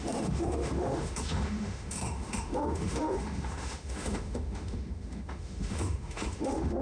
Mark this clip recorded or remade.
remade